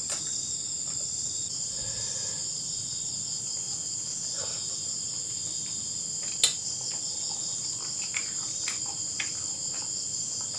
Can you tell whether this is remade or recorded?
recorded